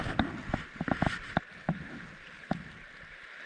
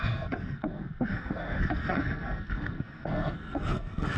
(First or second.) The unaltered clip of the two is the first